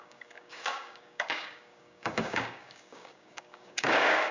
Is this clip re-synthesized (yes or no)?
yes